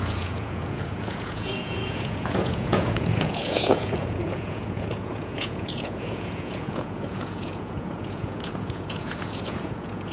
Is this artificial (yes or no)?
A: yes